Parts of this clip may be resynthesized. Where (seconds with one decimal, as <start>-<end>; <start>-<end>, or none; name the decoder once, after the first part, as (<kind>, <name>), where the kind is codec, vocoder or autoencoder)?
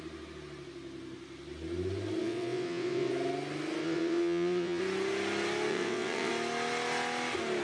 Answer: 2.2-3.1 (vocoder, WaveNeXt); 3.8-4.8; 5.7-6.3